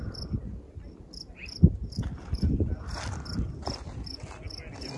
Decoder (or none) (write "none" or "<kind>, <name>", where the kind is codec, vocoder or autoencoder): none